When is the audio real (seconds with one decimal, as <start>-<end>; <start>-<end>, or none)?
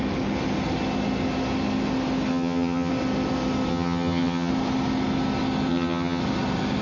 0.0-2.3; 2.9-3.7; 4.5-5.7; 6.2-6.8